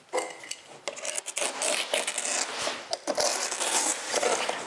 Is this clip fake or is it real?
real